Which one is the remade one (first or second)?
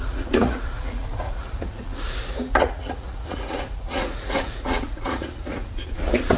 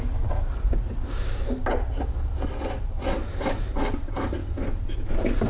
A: first